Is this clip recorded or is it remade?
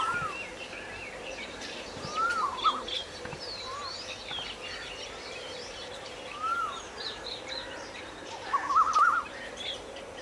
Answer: remade